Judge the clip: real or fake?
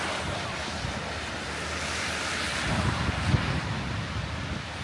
real